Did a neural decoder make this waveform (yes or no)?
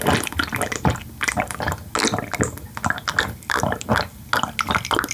no